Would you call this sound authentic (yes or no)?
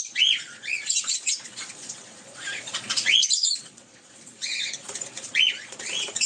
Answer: no